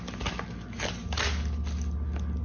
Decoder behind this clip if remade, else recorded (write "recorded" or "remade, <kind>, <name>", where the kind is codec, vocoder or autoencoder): recorded